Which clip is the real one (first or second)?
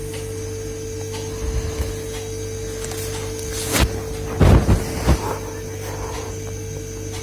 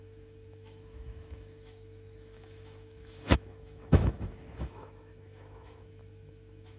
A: first